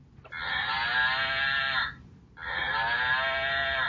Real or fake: real